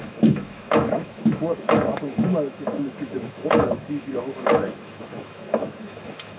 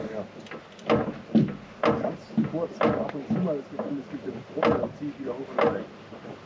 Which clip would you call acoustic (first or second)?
second